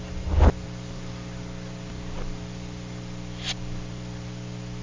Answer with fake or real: real